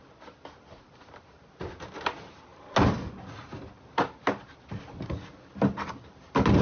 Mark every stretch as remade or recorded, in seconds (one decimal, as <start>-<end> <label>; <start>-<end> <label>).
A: 0.0-6.6 recorded